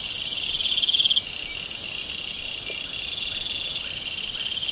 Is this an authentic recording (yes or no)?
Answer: yes